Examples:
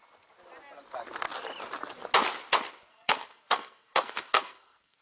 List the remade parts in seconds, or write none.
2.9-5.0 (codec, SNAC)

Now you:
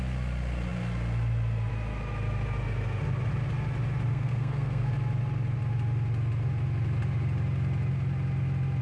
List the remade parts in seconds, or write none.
4.1-4.9 (codec, SNAC)

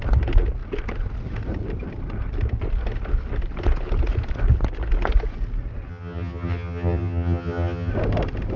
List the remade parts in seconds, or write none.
5.9-7.9 (vocoder, HiFi-GAN)